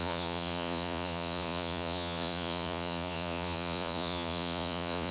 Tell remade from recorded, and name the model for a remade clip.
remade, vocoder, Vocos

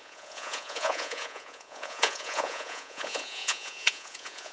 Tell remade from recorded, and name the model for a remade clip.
remade, vocoder, Vocos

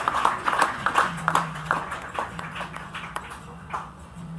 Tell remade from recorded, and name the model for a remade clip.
remade, vocoder, Vocos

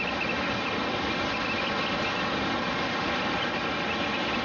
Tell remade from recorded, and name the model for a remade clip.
recorded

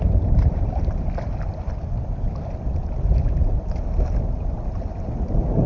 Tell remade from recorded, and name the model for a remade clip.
recorded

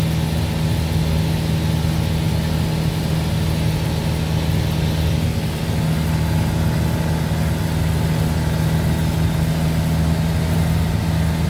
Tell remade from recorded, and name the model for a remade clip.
recorded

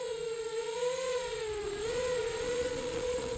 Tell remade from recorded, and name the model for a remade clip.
remade, vocoder, Vocos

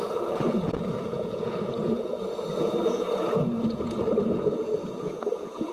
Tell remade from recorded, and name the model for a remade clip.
remade, vocoder, Vocos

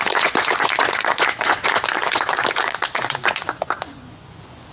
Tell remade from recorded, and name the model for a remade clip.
remade, vocoder, Vocos